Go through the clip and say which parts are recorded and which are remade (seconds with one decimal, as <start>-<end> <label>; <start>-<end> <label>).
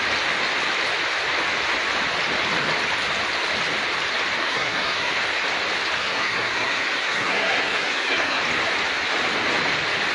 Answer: 0.0-4.4 recorded; 4.4-5.1 remade; 5.1-6.0 recorded; 6.0-8.4 remade; 8.4-10.1 recorded